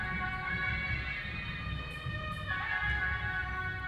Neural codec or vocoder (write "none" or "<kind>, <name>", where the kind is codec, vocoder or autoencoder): none